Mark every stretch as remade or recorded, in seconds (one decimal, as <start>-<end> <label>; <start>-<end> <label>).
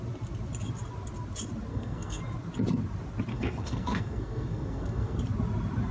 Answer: 0.0-1.7 recorded; 1.7-2.2 remade; 2.2-3.3 recorded; 3.3-5.2 remade; 5.2-5.9 recorded